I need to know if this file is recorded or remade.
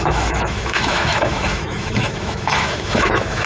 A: remade